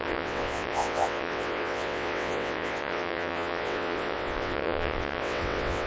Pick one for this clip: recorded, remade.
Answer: remade